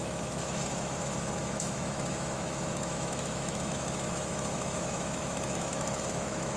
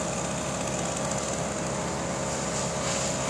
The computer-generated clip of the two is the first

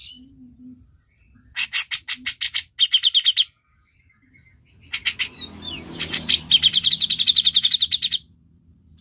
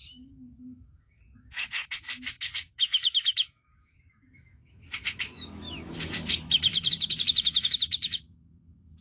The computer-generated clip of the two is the second